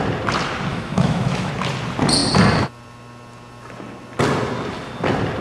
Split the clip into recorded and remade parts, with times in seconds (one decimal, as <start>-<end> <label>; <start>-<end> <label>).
0.0-0.7 recorded; 0.7-1.5 remade; 1.5-5.4 recorded